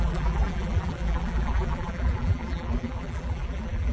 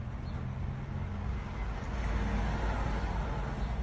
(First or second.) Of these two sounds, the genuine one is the second